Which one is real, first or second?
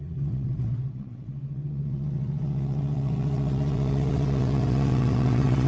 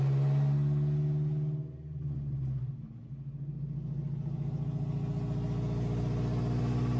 second